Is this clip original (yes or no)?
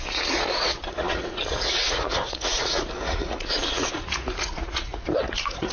no